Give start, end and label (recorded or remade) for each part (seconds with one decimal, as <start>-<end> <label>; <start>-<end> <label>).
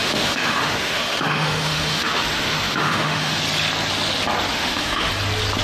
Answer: 0.0-3.4 remade; 3.4-4.5 recorded; 4.5-5.1 remade; 5.1-5.6 recorded